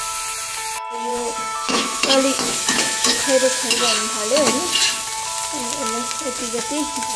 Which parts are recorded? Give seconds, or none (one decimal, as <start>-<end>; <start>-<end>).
0.0-1.1; 4.7-6.4